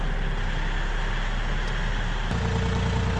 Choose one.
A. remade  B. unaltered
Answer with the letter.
B